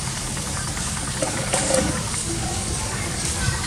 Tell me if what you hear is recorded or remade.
remade